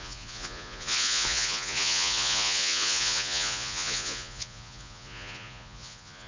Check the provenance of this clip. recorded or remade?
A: remade